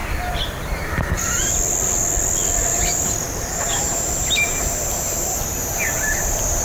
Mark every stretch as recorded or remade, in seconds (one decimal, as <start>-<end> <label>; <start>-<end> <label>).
0.0-1.5 remade; 1.5-2.7 recorded; 2.7-6.6 remade